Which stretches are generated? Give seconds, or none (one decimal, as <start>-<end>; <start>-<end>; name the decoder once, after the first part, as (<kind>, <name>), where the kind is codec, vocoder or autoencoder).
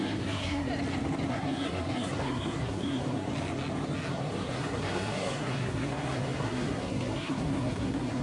0.0-0.7 (codec, SNAC); 1.3-3.3; 4.1-8.2